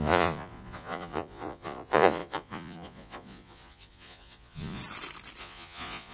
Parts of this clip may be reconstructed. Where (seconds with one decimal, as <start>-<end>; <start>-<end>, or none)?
0.0-4.8; 5.4-6.1